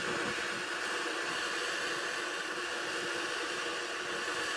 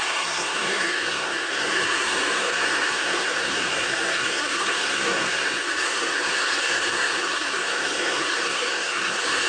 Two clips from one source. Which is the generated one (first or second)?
second